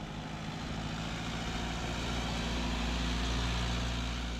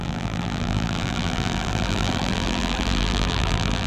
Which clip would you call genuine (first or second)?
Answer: first